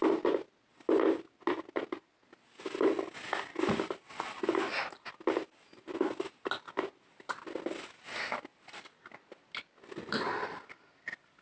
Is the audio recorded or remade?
recorded